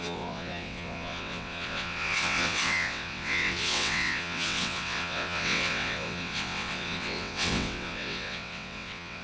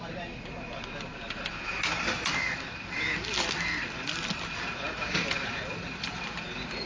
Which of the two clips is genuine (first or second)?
second